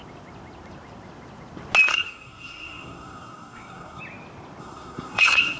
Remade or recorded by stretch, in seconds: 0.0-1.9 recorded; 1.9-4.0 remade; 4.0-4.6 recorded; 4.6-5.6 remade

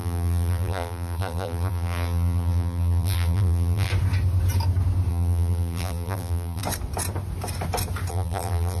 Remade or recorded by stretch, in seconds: 0.0-3.9 remade; 3.9-5.1 recorded; 5.1-6.6 remade; 6.6-8.1 recorded; 8.1-8.8 remade

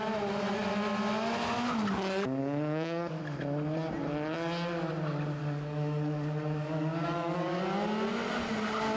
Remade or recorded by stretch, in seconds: 0.0-2.4 recorded; 2.4-3.2 remade; 3.2-5.4 recorded; 5.4-7.6 remade; 7.6-9.0 recorded

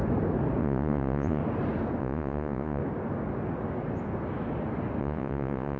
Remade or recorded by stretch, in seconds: 0.0-0.6 recorded; 0.6-1.4 remade; 1.4-2.0 recorded; 2.0-2.8 remade; 2.8-5.0 recorded; 5.0-5.8 remade

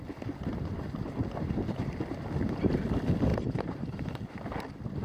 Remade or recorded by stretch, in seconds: 0.0-3.3 recorded; 3.3-4.3 remade; 4.3-5.0 recorded

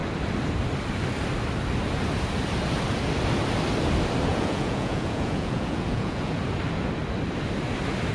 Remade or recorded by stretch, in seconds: 0.0-4.3 recorded; 4.3-6.4 remade; 6.4-8.1 recorded

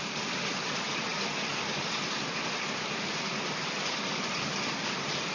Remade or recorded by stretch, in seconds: 0.0-5.3 recorded